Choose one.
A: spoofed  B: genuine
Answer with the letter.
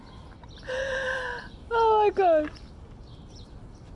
B